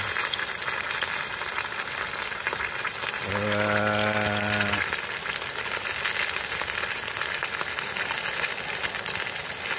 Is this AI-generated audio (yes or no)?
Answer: no